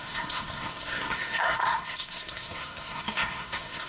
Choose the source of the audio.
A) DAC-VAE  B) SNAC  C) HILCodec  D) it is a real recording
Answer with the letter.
B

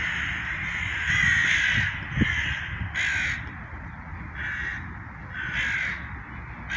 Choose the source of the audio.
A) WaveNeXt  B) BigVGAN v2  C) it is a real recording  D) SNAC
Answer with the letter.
C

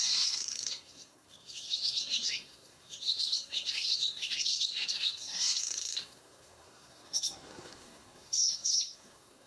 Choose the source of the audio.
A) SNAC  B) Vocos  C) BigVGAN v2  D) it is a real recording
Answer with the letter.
A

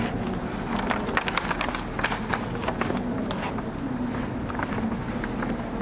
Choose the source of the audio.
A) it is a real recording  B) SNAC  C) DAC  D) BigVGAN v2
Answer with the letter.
A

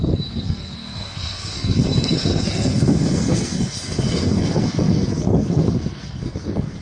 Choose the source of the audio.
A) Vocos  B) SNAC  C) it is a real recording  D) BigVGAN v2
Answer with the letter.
B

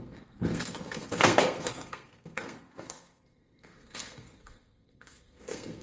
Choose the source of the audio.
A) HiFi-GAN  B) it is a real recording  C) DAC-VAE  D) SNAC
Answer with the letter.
D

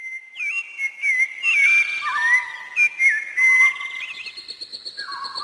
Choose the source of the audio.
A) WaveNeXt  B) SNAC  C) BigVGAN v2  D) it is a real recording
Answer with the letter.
D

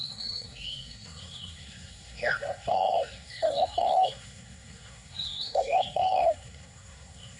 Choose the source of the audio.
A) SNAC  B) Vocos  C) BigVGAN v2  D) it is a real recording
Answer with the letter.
A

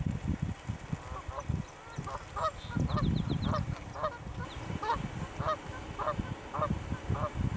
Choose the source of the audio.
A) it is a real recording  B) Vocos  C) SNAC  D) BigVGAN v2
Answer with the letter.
A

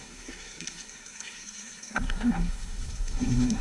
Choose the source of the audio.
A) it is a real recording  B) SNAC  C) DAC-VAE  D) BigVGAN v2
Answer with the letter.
B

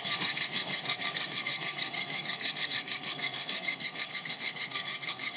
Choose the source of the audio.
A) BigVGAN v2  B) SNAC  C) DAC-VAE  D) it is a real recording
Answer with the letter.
B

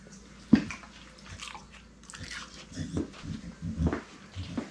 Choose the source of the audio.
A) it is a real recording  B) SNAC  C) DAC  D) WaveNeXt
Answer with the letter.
A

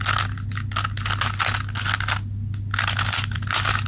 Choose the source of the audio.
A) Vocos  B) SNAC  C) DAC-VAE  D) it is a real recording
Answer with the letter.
D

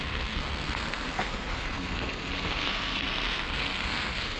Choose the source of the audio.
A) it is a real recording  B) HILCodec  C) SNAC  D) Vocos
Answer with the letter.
C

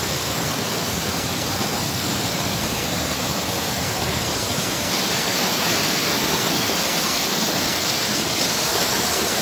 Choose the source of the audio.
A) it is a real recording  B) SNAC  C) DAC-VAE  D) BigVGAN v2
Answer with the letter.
B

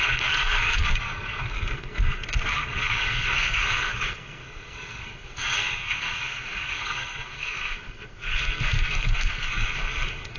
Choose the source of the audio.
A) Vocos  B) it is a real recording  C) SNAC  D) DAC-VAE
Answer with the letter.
C